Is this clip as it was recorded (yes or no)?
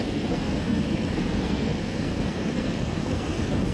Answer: no